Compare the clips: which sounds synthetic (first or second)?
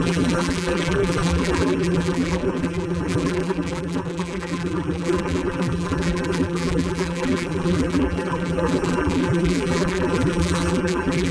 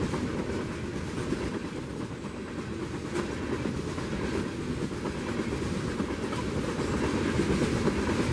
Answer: first